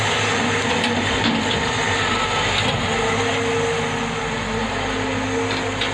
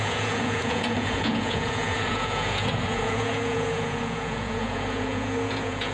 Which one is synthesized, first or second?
second